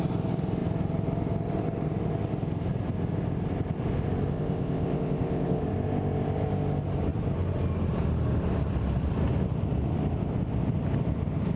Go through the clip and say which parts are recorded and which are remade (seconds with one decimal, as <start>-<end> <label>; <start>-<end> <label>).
0.0-4.3 recorded; 4.3-5.6 remade; 5.6-11.6 recorded